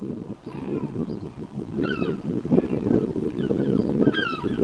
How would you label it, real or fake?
fake